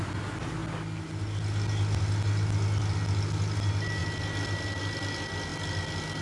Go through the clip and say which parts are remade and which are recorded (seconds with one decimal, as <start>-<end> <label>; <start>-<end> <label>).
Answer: 0.0-6.2 recorded